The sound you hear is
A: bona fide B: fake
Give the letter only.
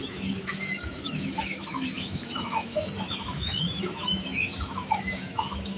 B